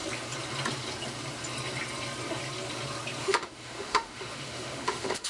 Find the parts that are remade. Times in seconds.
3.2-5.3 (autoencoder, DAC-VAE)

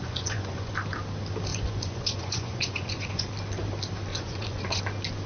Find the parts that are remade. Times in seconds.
0.0-0.7 (vocoder, Vocos); 1.5-3.3; 4.1-4.8

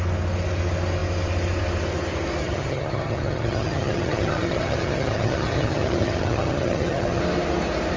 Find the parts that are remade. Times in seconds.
2.4-7.2 (vocoder, HiFi-GAN)

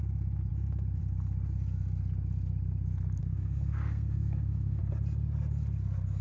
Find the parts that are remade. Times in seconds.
3.2-4.8 (codec, SNAC)

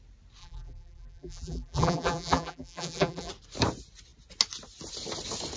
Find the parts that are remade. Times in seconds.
0.4-3.3 (vocoder, BigVGAN v2)